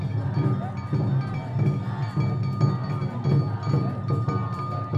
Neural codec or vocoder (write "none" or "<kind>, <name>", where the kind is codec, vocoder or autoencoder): none